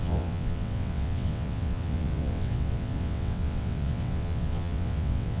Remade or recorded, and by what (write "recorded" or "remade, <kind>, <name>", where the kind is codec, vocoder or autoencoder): remade, vocoder, WaveNeXt